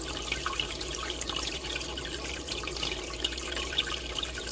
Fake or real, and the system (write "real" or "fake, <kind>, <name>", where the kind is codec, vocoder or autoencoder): fake, vocoder, BigVGAN v2